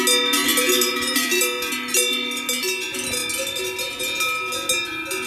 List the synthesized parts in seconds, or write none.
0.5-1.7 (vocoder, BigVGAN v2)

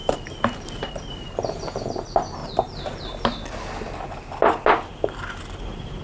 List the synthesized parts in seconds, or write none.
0.0-1.8 (vocoder, BigVGAN v2); 2.4-3.0; 4.9-6.0

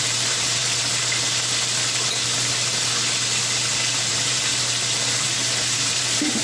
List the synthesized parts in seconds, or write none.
0.0-0.6 (vocoder, BigVGAN v2); 4.1-4.5; 5.2-6.4

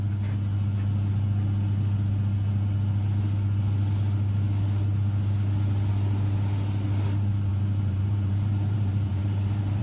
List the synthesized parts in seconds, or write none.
7.5-9.8 (vocoder, BigVGAN v2)

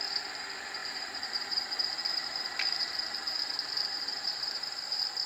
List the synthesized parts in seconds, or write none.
0.8-2.8 (vocoder, BigVGAN v2); 4.1-4.8

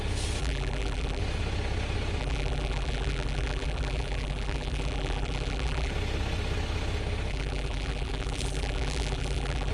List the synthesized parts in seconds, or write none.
0.4-1.2 (vocoder, BigVGAN v2); 2.2-5.9; 7.3-9.7